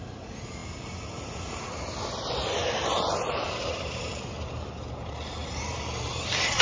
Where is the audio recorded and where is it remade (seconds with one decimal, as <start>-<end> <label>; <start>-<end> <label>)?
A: 0.0-2.6 recorded; 2.6-4.4 remade; 4.4-5.4 recorded; 5.4-6.6 remade